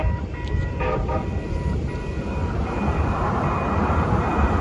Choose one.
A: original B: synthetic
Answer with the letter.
B